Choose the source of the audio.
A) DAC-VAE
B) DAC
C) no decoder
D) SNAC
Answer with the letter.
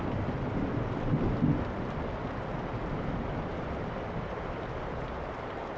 C